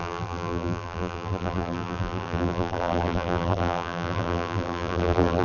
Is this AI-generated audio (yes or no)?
yes